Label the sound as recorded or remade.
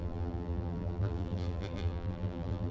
remade